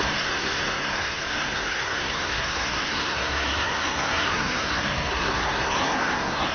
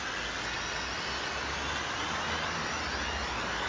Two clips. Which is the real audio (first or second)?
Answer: second